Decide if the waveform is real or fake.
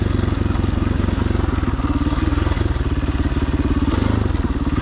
real